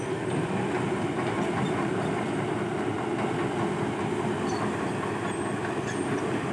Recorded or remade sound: recorded